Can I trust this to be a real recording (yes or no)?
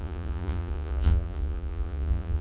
no